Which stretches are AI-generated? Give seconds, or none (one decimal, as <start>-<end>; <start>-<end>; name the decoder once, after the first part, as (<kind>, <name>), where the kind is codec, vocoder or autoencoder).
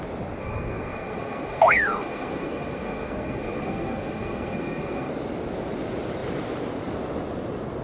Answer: 0.4-5.1 (codec, SNAC)